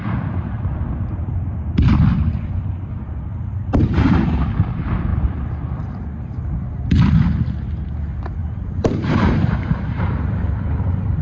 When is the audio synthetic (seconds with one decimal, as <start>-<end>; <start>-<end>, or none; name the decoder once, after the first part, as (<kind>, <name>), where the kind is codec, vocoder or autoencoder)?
8.4-11.2 (vocoder, BigVGAN v2)

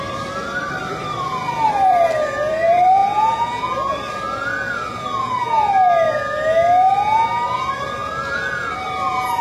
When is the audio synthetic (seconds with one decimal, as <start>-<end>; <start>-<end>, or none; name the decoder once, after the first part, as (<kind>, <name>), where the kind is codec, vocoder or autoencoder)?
0.0-3.0 (vocoder, BigVGAN v2); 7.6-8.0; 8.5-9.4

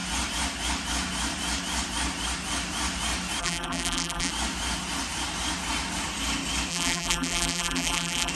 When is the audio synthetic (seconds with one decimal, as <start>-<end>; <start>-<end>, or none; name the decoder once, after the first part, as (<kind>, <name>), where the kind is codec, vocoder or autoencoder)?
3.4-4.3 (vocoder, BigVGAN v2); 6.7-8.3

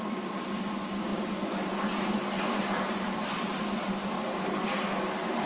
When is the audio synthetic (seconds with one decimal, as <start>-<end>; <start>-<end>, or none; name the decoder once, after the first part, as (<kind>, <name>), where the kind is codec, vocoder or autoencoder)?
0.0-5.5 (vocoder, BigVGAN v2)

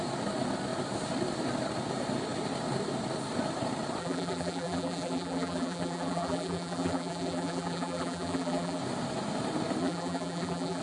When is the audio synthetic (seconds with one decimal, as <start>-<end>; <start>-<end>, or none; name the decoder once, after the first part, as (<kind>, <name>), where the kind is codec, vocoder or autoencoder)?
4.0-8.8 (vocoder, BigVGAN v2); 9.8-10.8

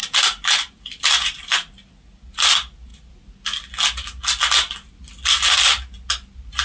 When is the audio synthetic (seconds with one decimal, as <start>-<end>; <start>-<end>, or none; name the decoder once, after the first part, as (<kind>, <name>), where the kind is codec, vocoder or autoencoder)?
0.0-1.0 (vocoder, BigVGAN v2)